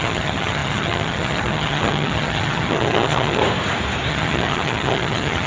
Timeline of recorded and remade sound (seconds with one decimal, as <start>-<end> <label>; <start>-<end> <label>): 0.0-3.4 remade; 3.4-4.1 recorded; 4.1-5.5 remade